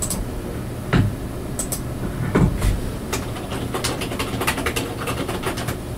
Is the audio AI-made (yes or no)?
no